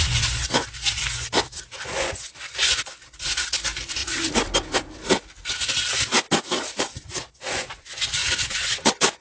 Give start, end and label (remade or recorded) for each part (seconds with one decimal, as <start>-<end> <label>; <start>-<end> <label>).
0.0-4.0 remade; 4.0-6.7 recorded; 6.7-9.2 remade